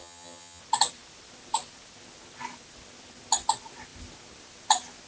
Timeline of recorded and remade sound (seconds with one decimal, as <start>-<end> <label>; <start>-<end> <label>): 0.0-0.6 remade; 0.6-5.1 recorded